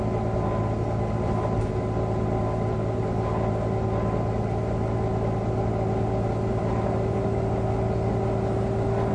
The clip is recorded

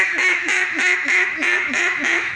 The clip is remade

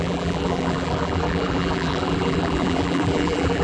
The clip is remade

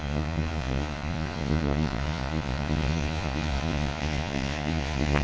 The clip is remade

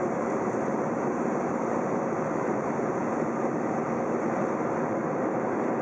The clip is remade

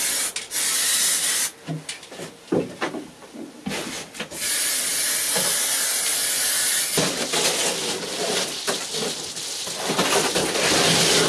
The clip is recorded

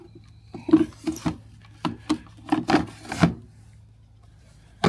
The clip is recorded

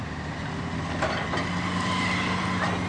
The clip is recorded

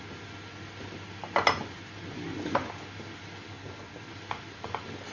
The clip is recorded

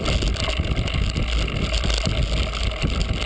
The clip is recorded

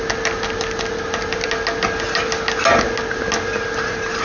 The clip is recorded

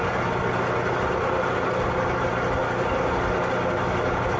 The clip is recorded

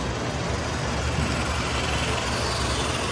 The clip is recorded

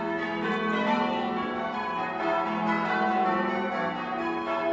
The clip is recorded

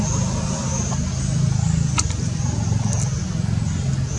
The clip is recorded